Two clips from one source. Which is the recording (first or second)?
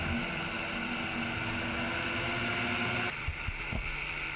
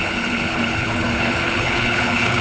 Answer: first